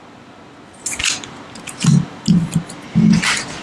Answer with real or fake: real